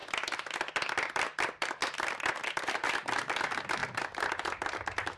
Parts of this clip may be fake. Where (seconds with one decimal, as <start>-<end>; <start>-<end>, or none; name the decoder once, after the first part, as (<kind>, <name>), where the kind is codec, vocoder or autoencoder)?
0.0-2.7 (vocoder, BigVGAN v2); 3.8-5.2